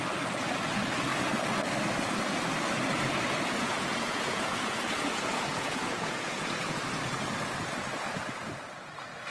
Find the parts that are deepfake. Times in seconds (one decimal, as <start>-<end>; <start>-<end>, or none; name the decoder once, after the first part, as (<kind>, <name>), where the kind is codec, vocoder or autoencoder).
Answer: 3.6-6.8 (vocoder, Vocos)